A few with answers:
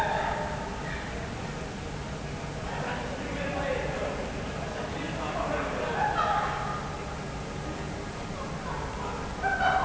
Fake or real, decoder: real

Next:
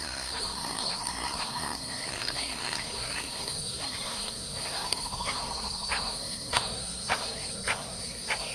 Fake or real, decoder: fake, codec, SNAC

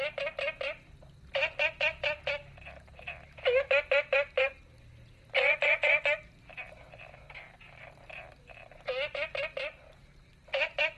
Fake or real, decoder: real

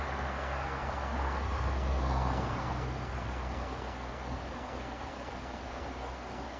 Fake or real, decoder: fake, codec, SNAC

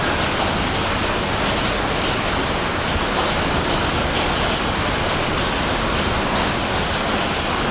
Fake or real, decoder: real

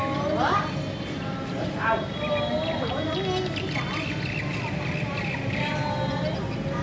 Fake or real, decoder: real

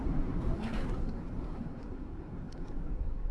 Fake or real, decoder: fake, codec, SNAC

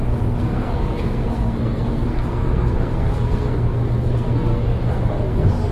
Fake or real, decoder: fake, codec, SNAC